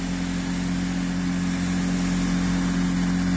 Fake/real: real